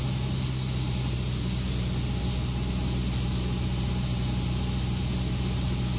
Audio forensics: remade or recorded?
recorded